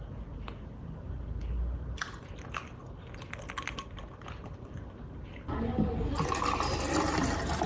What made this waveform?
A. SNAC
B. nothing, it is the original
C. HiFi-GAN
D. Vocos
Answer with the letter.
B